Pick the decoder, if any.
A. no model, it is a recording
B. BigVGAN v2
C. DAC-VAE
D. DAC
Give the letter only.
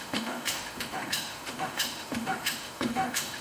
C